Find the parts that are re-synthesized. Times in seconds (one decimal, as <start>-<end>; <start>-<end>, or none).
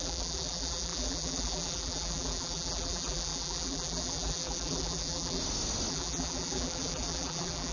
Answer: 0.0-5.4; 5.9-7.7